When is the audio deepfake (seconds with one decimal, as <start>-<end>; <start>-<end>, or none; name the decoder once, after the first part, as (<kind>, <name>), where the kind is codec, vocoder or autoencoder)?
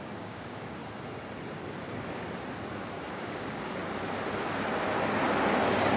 0.0-0.8 (codec, DAC); 3.1-3.8